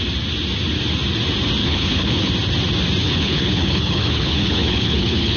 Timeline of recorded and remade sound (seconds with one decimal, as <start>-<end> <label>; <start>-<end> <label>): 0.0-1.6 recorded; 1.6-2.3 remade; 2.3-3.0 recorded; 3.0-5.4 remade